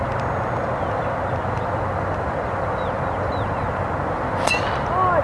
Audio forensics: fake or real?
real